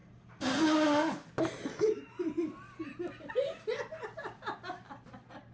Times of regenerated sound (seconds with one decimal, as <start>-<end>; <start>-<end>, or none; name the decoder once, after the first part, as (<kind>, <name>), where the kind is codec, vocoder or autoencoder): none